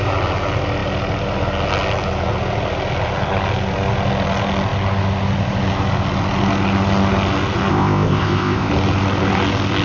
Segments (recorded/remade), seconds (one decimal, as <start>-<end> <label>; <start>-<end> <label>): 0.0-7.7 recorded; 7.7-8.7 remade; 8.7-9.8 recorded